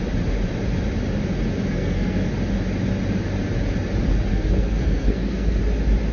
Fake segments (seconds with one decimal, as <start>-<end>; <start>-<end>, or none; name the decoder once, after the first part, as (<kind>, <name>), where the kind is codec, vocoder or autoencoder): 1.7-2.3 (codec, SNAC); 4.3-5.6